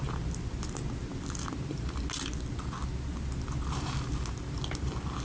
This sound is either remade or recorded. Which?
recorded